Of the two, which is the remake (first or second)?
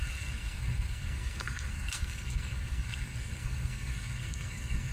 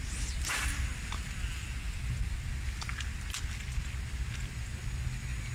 first